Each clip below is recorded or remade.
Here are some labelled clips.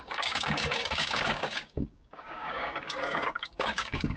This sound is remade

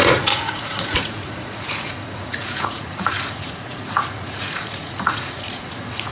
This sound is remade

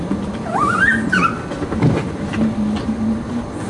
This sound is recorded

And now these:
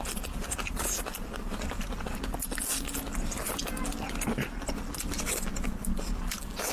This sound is recorded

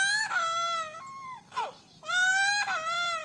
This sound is recorded